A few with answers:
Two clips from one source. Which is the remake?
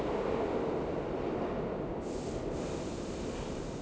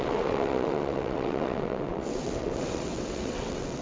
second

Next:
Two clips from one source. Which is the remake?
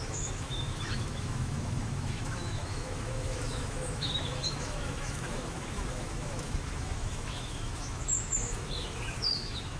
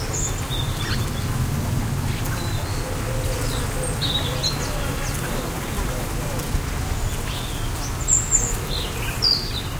first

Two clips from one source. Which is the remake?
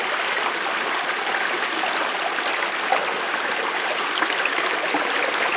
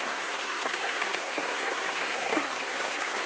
second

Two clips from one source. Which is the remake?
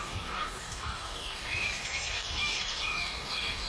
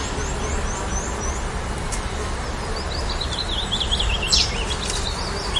first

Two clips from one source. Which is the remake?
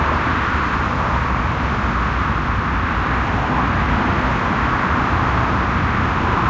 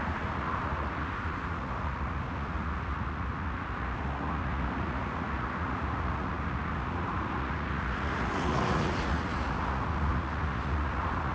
second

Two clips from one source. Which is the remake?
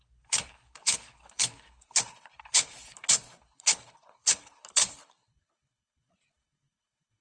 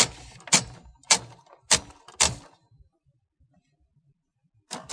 first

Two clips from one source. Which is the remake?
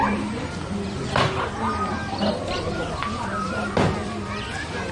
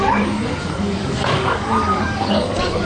second